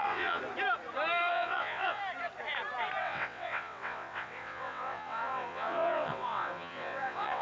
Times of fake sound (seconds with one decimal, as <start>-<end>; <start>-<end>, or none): 0.0-0.4; 1.3-2.0; 3.0-7.4